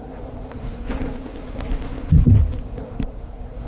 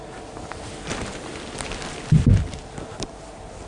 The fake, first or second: first